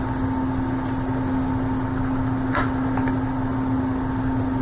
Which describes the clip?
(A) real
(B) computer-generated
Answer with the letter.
A